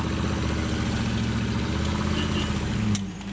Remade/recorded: recorded